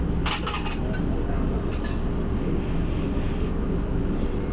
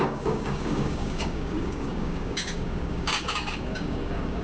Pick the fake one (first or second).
second